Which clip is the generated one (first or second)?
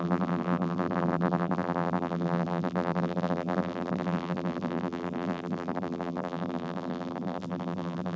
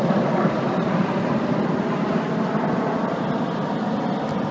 first